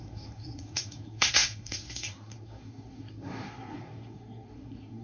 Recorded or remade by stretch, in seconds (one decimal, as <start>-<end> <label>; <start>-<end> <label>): 0.0-5.0 remade